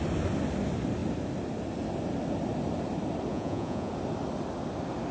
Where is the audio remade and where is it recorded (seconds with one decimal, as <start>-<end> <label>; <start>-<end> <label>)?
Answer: 0.0-3.3 recorded; 3.3-3.9 remade; 3.9-5.1 recorded